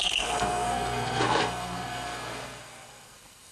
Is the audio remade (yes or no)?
yes